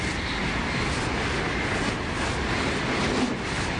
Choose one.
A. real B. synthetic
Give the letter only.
A